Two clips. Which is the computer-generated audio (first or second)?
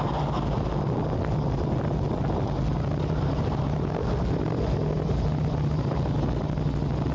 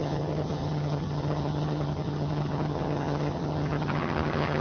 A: second